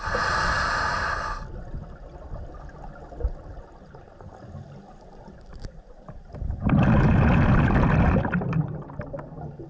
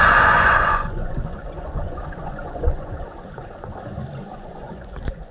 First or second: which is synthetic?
second